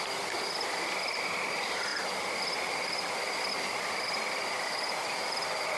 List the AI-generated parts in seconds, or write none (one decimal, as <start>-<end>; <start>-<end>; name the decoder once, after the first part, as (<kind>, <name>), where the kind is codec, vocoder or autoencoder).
none

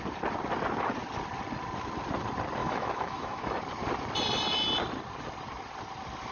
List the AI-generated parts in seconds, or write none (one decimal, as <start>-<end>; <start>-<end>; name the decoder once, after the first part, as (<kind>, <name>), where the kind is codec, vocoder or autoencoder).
2.6-3.6 (autoencoder, DAC-VAE)

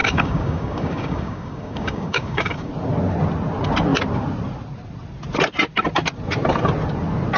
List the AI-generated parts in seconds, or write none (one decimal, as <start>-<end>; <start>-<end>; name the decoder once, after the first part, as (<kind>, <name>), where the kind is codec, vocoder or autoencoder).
0.0-2.7 (codec, DAC)

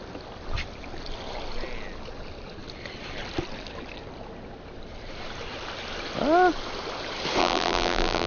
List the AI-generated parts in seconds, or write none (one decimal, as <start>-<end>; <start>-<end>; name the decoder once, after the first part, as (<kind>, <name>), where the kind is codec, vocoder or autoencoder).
7.4-8.3 (vocoder, BigVGAN v2)

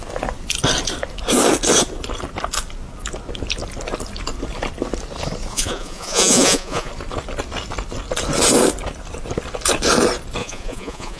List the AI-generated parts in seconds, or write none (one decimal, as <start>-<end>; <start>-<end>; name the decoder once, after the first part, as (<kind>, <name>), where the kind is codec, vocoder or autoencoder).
5.5-6.9 (vocoder, Vocos); 10.4-11.2

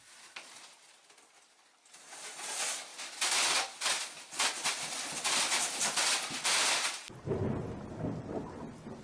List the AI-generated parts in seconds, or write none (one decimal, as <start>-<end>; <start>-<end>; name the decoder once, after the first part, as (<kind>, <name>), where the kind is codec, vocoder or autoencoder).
none

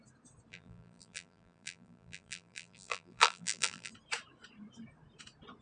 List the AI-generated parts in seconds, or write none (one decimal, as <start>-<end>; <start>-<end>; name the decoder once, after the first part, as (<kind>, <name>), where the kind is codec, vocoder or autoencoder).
0.5-3.9 (vocoder, BigVGAN v2)

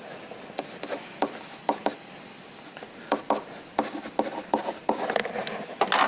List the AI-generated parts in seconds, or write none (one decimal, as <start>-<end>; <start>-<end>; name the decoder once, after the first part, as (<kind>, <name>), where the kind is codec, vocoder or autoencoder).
none